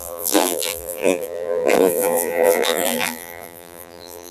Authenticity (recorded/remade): remade